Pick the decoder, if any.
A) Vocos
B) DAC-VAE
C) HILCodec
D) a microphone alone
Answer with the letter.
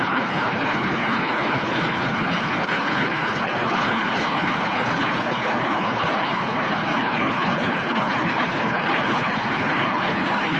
C